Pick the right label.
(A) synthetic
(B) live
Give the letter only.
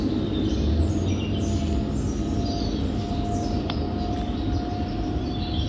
B